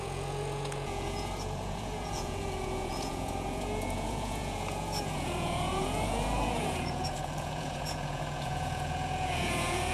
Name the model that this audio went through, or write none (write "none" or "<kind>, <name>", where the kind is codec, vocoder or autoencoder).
vocoder, Vocos